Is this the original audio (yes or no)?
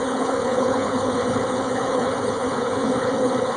no